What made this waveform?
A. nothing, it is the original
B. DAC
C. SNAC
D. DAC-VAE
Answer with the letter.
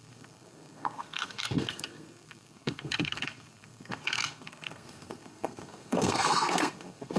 C